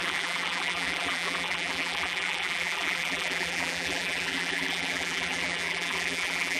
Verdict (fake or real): fake